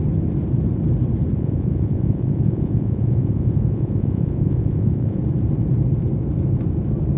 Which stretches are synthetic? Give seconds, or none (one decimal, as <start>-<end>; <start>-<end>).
1.3-5.2